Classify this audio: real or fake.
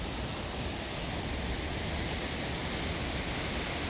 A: real